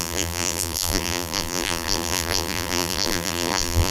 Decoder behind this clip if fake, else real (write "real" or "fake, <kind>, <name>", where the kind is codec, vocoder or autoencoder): fake, vocoder, BigVGAN v2